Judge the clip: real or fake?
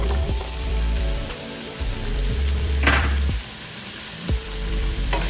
fake